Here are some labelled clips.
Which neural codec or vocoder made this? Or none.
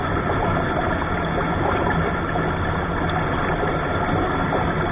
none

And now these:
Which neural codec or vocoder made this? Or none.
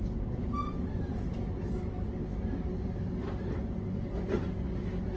none